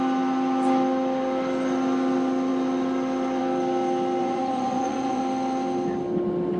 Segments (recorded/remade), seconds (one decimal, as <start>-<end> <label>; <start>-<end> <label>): 0.0-4.2 recorded; 4.2-5.2 remade; 5.2-6.6 recorded